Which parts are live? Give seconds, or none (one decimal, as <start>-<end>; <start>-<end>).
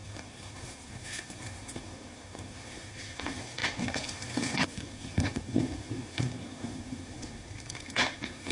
none